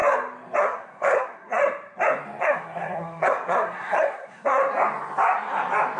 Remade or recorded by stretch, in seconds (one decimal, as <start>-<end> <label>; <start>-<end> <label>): 0.0-0.6 recorded; 0.6-1.6 remade; 1.6-2.4 recorded; 2.4-4.6 remade; 4.6-6.0 recorded